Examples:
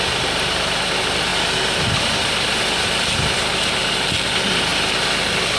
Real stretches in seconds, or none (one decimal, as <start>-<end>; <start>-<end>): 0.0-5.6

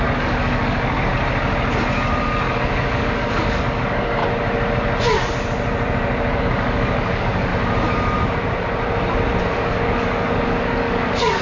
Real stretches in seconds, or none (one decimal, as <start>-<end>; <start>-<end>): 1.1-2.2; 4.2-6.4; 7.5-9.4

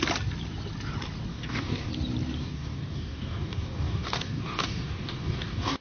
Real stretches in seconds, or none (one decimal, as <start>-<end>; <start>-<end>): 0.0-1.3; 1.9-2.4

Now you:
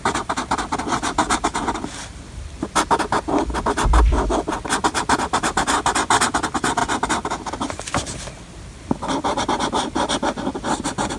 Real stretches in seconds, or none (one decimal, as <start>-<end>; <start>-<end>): 0.0-11.2

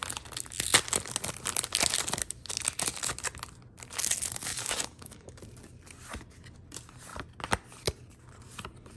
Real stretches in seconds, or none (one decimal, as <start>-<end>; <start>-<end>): 0.0-4.5; 5.4-9.0

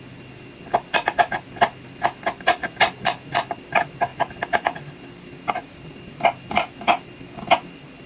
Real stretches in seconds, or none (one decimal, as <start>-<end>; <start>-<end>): 0.0-8.1